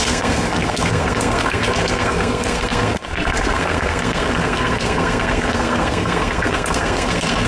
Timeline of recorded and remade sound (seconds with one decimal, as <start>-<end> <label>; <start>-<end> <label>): 0.0-7.5 remade

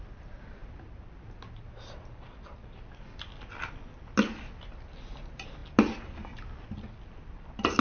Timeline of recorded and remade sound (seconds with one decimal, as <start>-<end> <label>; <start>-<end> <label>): 0.0-7.8 recorded

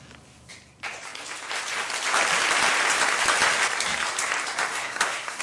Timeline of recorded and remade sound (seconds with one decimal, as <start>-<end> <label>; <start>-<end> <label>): 0.0-4.7 recorded; 4.7-5.4 remade

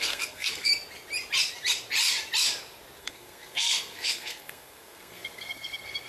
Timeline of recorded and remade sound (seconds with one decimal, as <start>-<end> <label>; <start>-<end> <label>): 0.0-0.7 remade; 0.7-3.0 recorded; 3.0-6.1 remade

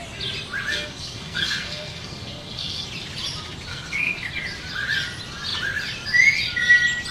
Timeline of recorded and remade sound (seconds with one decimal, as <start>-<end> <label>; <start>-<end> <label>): 0.0-0.7 recorded; 0.7-2.9 remade; 2.9-3.7 recorded; 3.7-4.3 remade; 4.3-7.1 recorded

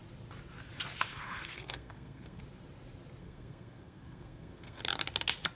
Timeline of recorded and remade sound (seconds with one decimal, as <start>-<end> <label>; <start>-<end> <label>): 0.0-1.1 recorded; 1.1-2.4 remade; 2.4-3.2 recorded; 3.2-4.8 remade; 4.8-5.5 recorded

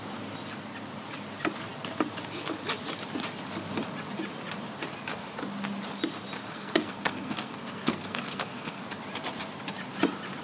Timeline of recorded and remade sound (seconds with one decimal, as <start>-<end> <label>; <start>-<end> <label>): 0.0-6.4 recorded; 6.4-8.8 remade; 8.8-10.4 recorded

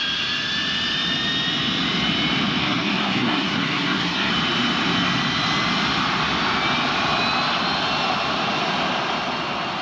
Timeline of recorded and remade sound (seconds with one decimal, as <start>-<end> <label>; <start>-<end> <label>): 0.0-2.6 recorded; 2.6-4.3 remade; 4.3-9.8 recorded